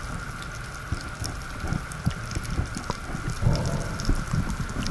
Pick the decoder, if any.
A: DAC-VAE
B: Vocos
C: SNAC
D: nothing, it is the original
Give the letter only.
D